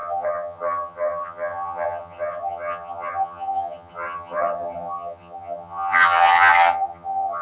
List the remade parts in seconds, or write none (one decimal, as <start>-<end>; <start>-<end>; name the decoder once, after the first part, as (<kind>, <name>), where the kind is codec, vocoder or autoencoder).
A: 0.0-7.4 (vocoder, HiFi-GAN)